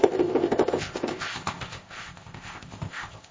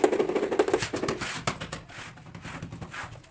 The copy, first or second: first